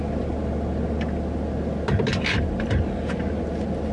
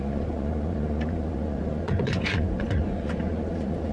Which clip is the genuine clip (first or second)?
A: first